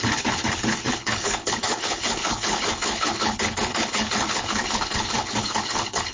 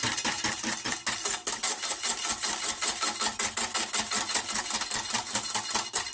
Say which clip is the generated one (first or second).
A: first